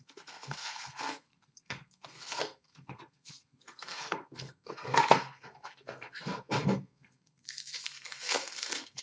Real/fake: fake